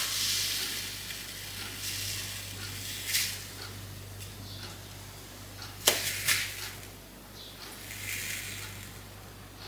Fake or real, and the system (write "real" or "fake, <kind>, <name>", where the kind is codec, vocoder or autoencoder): real